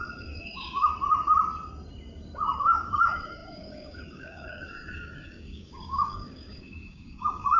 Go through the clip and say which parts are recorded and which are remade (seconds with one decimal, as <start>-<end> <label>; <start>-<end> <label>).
0.0-0.9 remade; 0.9-2.6 recorded; 2.6-7.6 remade